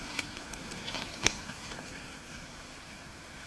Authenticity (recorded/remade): remade